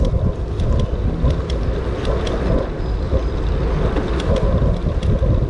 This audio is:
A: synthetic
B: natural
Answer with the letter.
B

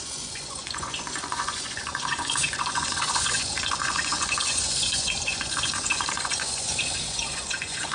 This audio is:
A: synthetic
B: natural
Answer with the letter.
A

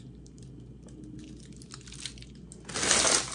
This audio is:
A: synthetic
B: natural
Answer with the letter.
B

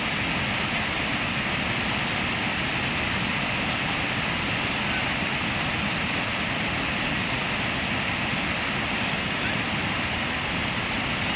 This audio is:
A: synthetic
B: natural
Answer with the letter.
B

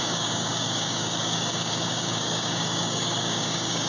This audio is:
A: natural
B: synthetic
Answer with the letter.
B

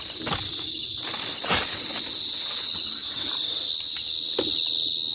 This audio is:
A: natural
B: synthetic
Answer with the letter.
A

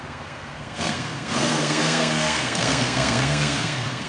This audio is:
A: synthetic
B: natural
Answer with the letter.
A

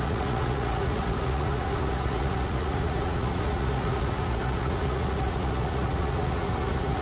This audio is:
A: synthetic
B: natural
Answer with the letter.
A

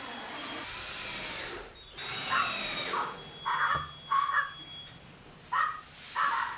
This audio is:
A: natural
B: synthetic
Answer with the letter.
A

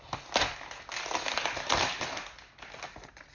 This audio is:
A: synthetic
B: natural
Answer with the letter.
B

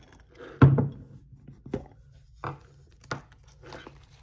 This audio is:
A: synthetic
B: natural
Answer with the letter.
B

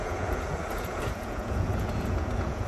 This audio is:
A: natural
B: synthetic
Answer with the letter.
B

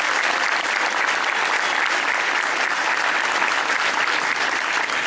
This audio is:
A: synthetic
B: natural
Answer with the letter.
B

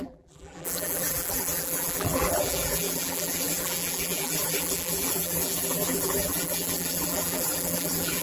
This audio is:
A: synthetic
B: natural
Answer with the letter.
A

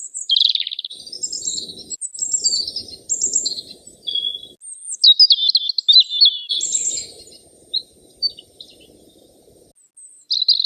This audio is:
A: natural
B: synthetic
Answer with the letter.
A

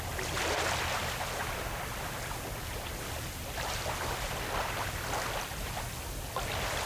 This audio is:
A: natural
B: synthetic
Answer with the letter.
A